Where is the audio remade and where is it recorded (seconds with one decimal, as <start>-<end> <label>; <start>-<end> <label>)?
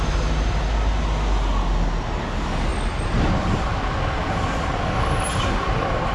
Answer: 0.0-6.1 recorded